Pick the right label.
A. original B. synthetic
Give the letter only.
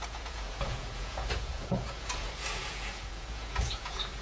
B